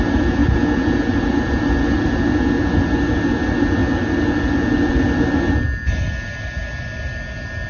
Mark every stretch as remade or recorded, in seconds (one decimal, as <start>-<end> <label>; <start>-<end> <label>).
0.0-7.7 recorded